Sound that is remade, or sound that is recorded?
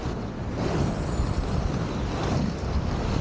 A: recorded